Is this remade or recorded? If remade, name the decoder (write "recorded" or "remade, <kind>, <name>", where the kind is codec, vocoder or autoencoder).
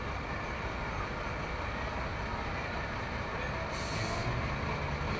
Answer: recorded